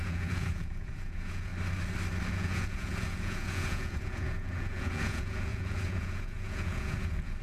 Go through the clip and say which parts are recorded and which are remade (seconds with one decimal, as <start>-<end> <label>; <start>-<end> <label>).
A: 0.0-1.5 remade; 1.5-2.3 recorded; 2.3-7.4 remade